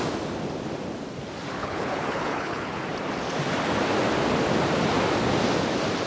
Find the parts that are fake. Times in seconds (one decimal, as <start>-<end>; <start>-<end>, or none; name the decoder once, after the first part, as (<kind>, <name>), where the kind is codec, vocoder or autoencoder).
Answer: 1.6-2.8 (codec, HILCodec)